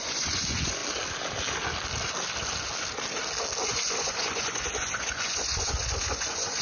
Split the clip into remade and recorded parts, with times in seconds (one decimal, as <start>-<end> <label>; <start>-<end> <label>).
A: 0.0-0.8 remade; 0.8-3.6 recorded; 3.6-6.6 remade